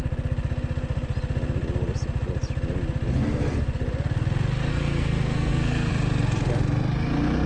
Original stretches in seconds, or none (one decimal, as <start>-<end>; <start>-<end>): 0.0-4.7; 5.9-7.5